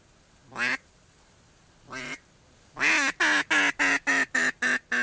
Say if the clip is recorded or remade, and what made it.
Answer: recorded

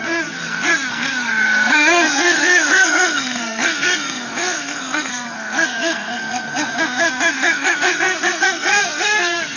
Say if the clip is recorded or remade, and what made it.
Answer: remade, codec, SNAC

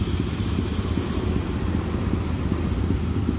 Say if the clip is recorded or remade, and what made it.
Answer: recorded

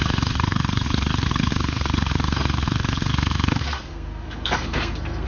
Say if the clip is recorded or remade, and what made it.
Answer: remade, codec, SNAC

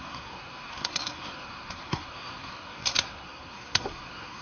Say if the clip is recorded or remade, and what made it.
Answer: remade, codec, SNAC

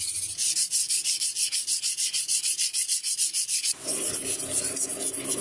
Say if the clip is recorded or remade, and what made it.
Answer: recorded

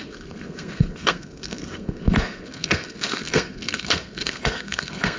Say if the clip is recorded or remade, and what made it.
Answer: remade, codec, SNAC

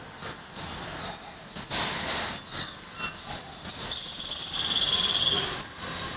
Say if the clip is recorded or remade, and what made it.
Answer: recorded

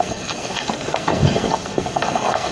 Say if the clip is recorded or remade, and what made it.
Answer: remade, codec, SNAC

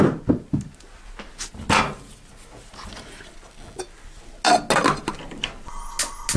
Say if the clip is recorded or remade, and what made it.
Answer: recorded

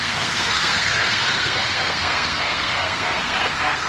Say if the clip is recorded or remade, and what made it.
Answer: remade, codec, SNAC